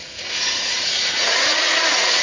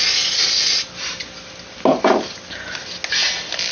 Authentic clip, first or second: second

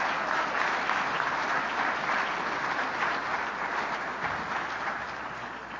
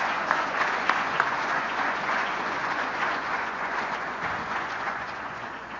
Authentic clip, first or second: first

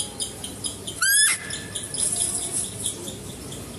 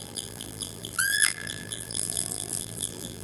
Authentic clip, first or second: first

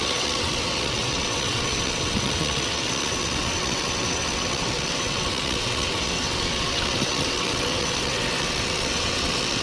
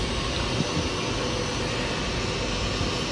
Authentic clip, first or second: second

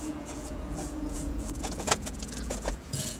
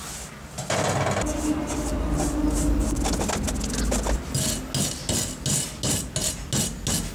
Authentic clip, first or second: second